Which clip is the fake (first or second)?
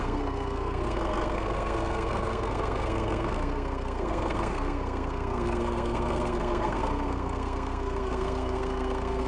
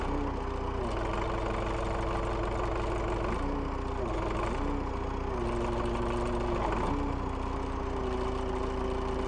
first